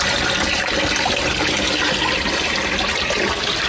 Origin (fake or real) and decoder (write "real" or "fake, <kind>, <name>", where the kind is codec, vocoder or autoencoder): real